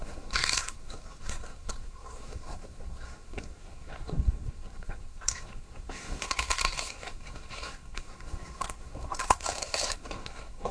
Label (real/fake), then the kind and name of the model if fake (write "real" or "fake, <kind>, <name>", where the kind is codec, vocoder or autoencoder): fake, codec, SNAC